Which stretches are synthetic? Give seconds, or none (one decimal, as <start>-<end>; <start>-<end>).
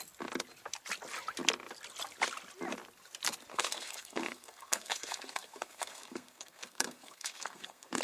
3.5-8.0